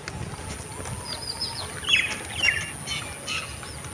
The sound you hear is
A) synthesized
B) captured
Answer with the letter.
B